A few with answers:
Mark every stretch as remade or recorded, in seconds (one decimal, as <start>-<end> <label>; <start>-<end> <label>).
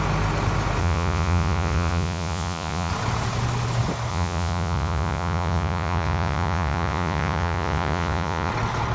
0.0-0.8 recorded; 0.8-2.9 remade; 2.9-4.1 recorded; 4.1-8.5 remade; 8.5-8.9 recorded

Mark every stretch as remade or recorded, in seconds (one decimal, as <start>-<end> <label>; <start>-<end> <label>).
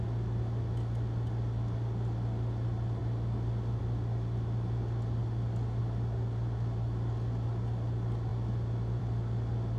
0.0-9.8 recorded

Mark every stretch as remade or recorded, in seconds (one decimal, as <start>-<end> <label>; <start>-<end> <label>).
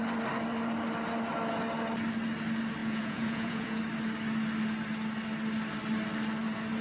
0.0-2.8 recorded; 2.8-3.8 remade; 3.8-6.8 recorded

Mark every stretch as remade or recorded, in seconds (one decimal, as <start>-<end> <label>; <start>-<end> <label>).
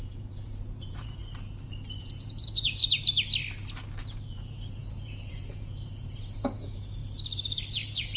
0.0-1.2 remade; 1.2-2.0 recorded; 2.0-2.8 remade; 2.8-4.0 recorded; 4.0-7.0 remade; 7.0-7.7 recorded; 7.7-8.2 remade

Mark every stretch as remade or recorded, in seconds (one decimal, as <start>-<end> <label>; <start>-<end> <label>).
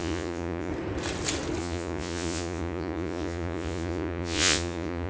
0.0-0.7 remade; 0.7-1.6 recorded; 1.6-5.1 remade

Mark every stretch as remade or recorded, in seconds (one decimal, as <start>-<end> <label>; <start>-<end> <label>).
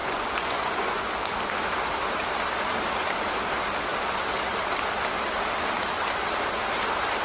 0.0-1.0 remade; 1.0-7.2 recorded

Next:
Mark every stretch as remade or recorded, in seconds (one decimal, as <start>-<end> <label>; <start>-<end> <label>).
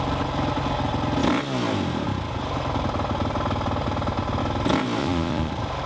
0.0-5.0 recorded; 5.0-5.5 remade; 5.5-5.9 recorded